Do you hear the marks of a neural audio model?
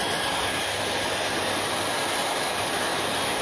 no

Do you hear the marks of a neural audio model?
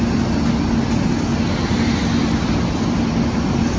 no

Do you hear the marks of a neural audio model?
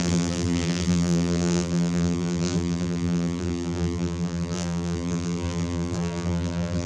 yes